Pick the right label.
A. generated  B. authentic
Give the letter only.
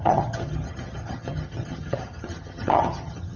A